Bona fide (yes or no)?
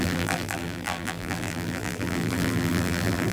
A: no